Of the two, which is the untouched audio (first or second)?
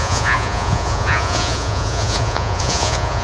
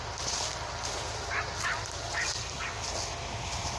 second